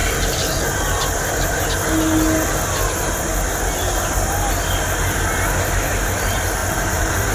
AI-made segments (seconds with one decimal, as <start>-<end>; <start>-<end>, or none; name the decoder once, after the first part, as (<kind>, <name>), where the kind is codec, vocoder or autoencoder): 0.0-1.6 (vocoder, BigVGAN v2); 6.6-7.3